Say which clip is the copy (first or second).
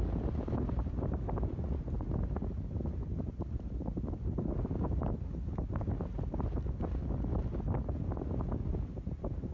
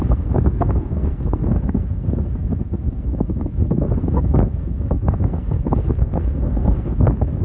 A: second